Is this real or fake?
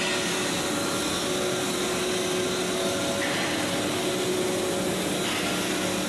real